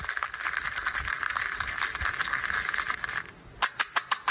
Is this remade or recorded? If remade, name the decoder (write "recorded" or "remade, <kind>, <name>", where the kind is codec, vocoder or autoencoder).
recorded